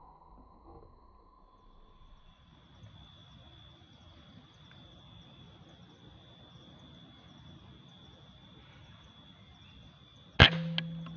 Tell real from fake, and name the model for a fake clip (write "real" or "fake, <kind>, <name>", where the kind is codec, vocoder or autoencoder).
real